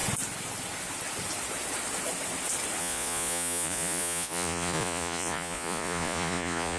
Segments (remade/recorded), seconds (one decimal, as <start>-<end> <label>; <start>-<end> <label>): 0.0-2.8 recorded; 2.8-6.8 remade